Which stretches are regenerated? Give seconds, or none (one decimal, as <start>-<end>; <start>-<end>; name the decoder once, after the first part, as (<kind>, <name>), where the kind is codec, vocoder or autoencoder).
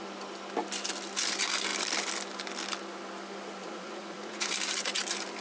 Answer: 3.6-4.5 (vocoder, Vocos)